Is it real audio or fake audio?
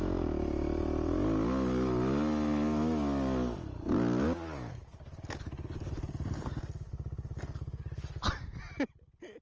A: real